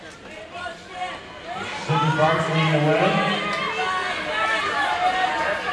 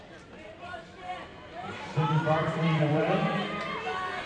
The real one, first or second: first